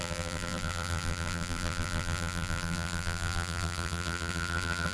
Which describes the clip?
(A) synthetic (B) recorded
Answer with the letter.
A